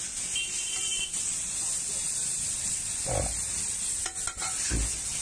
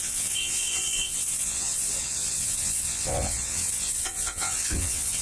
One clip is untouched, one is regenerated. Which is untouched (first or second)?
first